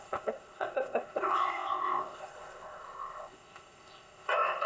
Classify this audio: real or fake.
fake